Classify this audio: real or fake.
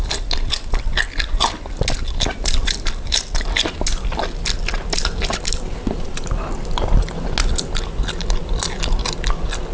real